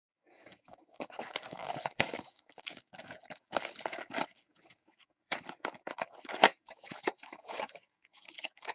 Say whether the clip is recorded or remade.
remade